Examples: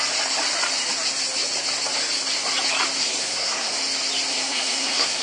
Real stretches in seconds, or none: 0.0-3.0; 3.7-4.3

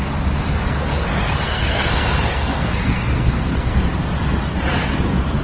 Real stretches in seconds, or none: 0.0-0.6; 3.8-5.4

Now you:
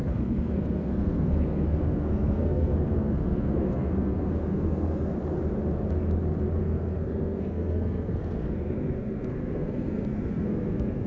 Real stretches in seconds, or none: 5.1-6.6